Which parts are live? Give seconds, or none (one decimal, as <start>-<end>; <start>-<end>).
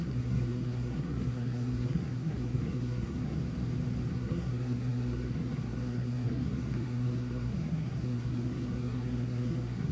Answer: 3.4-4.1